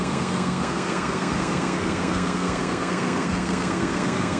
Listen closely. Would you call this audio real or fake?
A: fake